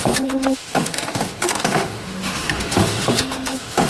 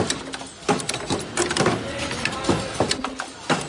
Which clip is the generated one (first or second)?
first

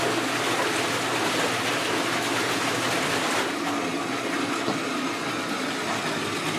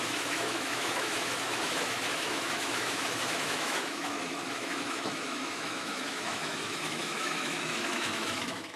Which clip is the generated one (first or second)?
second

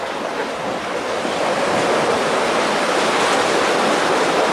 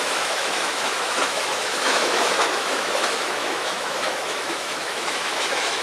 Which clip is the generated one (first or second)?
second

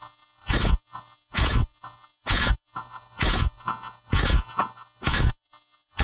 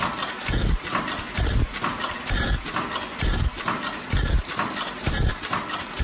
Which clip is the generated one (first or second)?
first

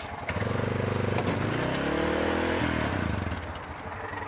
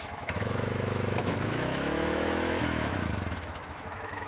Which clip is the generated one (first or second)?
second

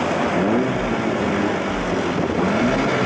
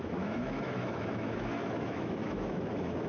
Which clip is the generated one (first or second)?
second